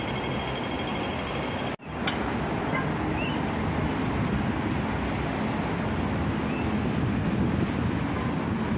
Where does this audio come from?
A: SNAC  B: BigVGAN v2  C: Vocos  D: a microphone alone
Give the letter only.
D